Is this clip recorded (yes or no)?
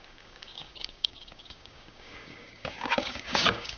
no